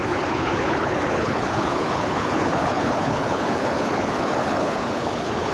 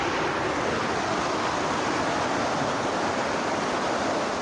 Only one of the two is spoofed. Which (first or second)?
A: first